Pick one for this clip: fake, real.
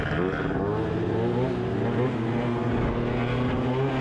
real